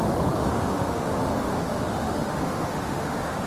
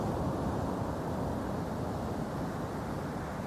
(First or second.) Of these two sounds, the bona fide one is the second